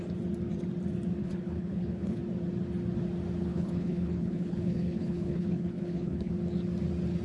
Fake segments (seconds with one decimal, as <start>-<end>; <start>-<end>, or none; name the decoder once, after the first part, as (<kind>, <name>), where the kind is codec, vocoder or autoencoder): 1.2-2.2 (codec, HILCodec); 3.4-6.3